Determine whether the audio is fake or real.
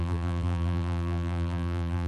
fake